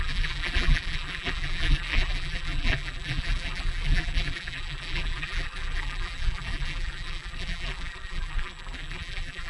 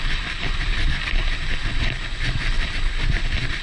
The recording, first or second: second